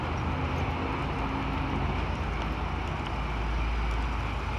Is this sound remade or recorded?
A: recorded